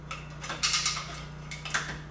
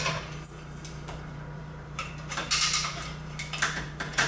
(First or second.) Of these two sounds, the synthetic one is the second